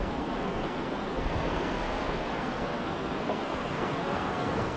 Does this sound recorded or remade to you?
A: remade